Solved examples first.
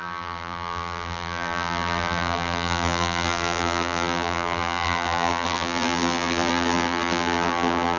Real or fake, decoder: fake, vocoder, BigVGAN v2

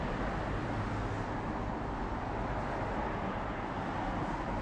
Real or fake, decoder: real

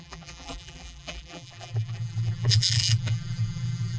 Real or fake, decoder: fake, vocoder, BigVGAN v2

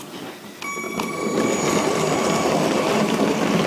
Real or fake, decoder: real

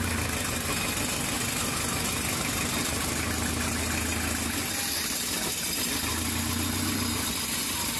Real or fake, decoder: real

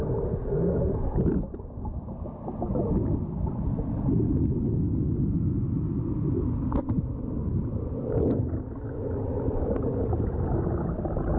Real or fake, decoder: real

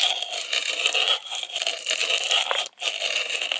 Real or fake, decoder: real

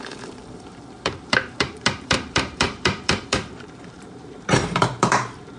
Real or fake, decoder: fake, vocoder, BigVGAN v2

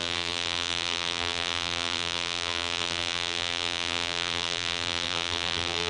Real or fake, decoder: fake, vocoder, BigVGAN v2